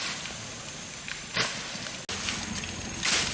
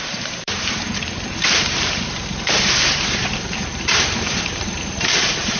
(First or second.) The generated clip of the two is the second